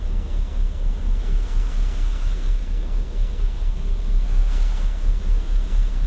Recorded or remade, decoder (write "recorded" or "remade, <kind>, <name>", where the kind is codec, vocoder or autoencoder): remade, codec, SNAC